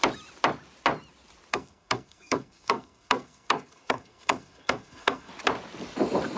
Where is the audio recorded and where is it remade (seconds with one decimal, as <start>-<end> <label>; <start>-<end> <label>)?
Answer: 0.0-1.5 recorded; 1.5-5.3 remade; 5.3-6.4 recorded